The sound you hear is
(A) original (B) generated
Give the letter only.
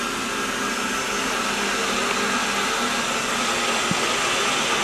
A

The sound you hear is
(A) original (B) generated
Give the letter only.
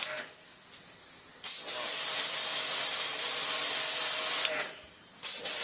B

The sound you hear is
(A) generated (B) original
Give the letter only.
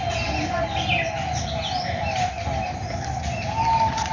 B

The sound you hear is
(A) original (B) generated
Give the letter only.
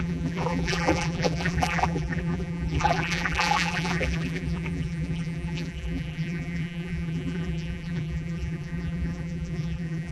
B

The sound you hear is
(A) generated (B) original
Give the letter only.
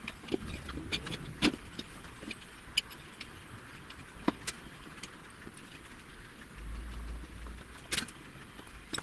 B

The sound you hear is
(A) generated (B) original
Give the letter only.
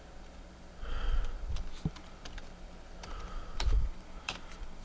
A